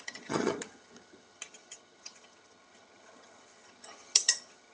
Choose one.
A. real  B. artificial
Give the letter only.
B